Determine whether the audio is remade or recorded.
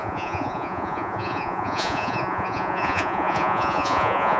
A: remade